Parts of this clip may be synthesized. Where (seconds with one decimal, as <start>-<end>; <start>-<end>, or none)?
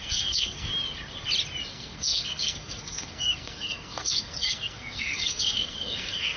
0.0-0.7; 1.7-6.4